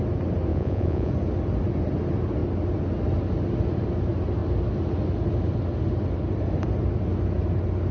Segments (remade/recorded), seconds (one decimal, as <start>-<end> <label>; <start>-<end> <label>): 0.0-0.5 recorded; 0.5-1.1 remade; 1.1-7.9 recorded